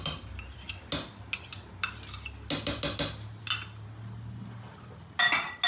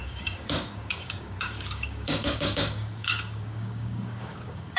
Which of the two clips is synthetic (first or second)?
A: second